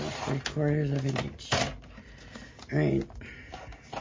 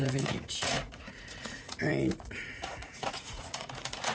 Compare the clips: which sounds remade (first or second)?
second